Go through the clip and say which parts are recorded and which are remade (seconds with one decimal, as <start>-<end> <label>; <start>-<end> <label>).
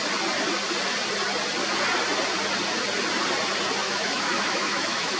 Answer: 0.0-3.8 recorded; 3.8-5.2 remade